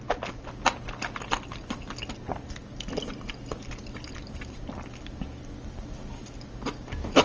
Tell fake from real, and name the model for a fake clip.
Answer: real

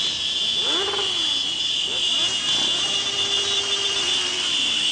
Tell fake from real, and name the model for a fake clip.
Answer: real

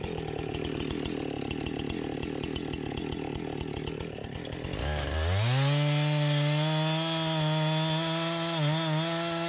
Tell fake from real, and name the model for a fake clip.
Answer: real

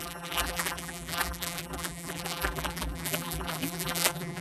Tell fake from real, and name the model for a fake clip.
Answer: fake, vocoder, BigVGAN v2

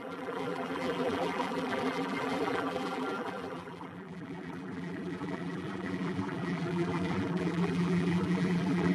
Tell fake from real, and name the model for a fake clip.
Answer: fake, vocoder, BigVGAN v2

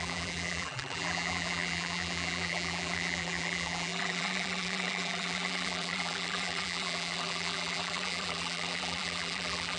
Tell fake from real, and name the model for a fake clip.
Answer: fake, vocoder, BigVGAN v2